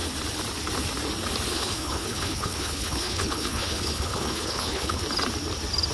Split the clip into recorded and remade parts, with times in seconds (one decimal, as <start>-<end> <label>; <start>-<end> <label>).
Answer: 0.0-1.5 recorded; 1.5-5.0 remade; 5.0-5.9 recorded